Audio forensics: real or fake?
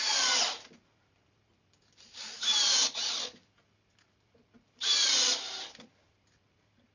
real